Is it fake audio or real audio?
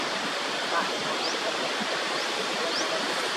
real